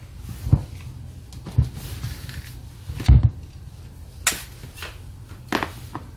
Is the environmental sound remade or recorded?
recorded